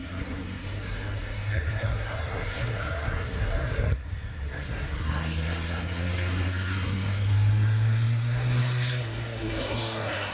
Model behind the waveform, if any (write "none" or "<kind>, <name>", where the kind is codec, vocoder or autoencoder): codec, SNAC